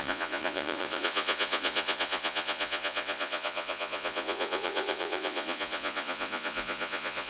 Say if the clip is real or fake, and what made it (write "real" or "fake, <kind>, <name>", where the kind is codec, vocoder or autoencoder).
fake, vocoder, Vocos